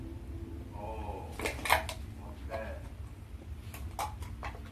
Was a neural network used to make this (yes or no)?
no